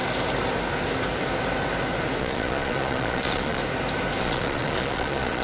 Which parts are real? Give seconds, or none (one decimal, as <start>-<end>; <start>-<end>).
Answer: 0.0-2.2; 3.6-4.2